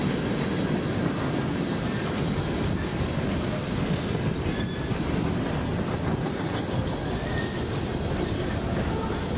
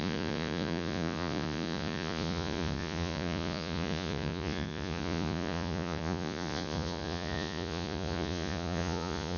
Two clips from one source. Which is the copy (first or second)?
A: second